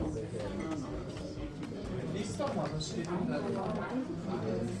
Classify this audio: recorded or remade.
recorded